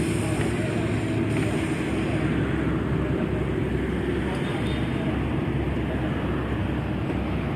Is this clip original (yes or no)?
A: yes